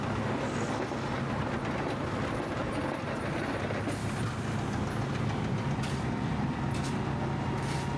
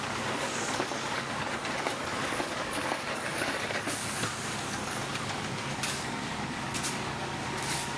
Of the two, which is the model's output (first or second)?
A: second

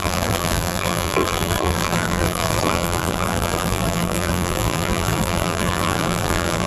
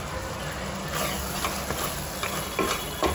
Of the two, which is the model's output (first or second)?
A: first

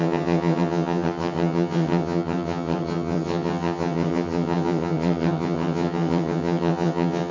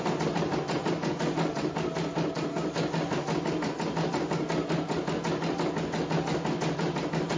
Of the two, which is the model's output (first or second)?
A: first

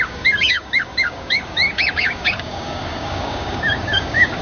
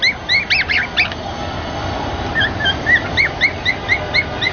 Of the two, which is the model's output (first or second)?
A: first